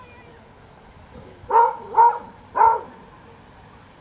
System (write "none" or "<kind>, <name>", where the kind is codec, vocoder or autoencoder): none